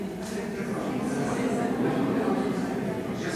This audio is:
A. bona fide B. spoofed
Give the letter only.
A